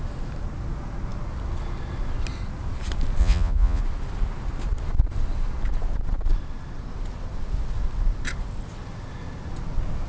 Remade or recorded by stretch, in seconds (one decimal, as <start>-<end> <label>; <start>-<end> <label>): 0.0-3.2 recorded; 3.2-3.8 remade; 3.8-10.1 recorded